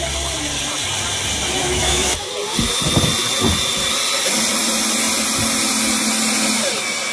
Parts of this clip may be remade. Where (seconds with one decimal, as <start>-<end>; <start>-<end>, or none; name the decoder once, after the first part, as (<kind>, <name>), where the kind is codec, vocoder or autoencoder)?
1.6-2.3 (autoencoder, DAC-VAE)